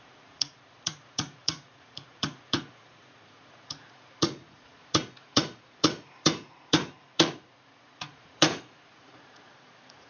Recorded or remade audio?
remade